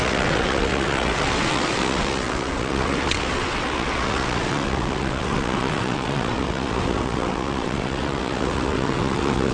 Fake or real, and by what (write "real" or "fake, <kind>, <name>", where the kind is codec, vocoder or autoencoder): fake, vocoder, WaveNeXt